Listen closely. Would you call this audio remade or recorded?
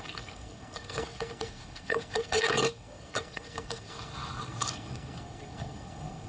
remade